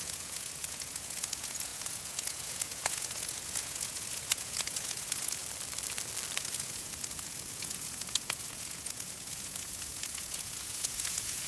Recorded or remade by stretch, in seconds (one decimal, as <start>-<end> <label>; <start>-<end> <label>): 0.0-5.4 remade; 5.4-6.4 recorded; 6.4-11.5 remade